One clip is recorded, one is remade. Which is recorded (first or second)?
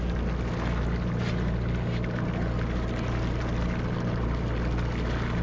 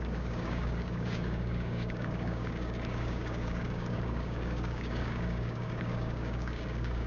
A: first